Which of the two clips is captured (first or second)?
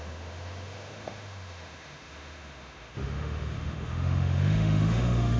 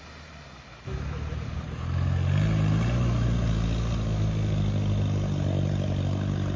second